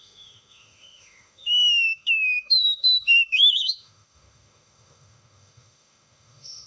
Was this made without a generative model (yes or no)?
no